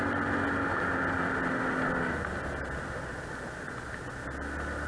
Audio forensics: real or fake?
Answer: real